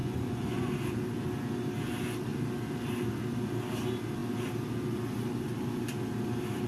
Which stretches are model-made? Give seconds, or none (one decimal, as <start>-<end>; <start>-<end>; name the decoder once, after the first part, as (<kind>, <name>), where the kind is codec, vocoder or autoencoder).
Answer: 0.0-0.7 (vocoder, Vocos)